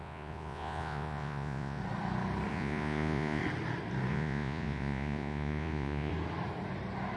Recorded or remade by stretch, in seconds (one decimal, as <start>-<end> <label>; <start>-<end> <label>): 0.0-1.8 remade; 1.8-2.5 recorded; 2.5-3.4 remade; 3.4-4.1 recorded; 4.1-6.1 remade; 6.1-7.2 recorded